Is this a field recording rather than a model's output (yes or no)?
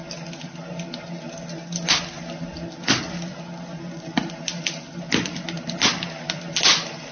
yes